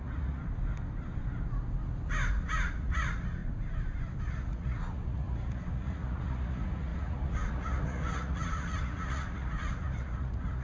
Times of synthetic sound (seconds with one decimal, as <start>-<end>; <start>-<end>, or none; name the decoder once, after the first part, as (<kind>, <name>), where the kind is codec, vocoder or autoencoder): 0.0-0.4 (vocoder, Vocos); 2.3-3.4; 4.2-10.6